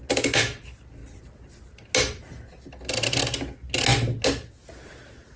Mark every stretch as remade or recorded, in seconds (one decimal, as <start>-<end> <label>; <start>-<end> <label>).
0.0-5.4 recorded